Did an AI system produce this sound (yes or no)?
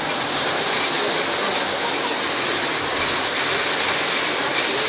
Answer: no